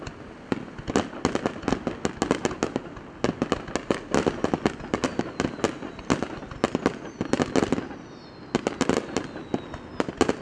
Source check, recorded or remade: recorded